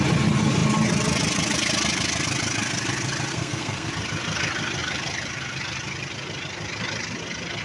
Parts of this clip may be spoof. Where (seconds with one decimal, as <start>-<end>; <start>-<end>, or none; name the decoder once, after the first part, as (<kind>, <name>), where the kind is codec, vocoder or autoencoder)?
3.3-3.9 (codec, SNAC)